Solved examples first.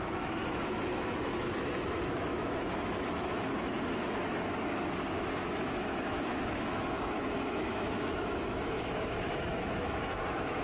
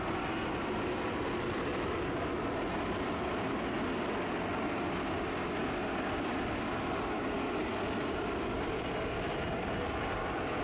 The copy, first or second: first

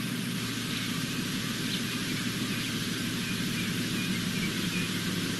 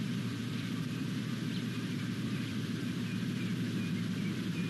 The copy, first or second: second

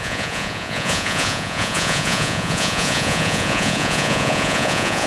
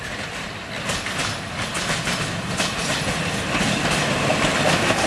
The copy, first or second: first